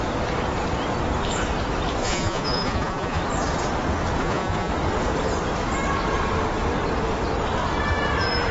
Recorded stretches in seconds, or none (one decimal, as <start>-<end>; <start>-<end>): 0.0-2.0; 3.2-4.2; 4.7-8.5